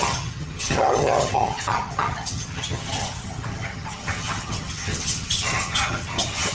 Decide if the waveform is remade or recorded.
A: remade